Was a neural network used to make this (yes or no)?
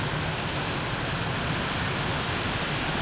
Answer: no